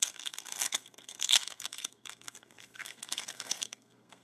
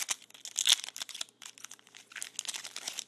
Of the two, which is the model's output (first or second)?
first